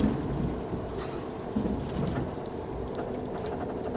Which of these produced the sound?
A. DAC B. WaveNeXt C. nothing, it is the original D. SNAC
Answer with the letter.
C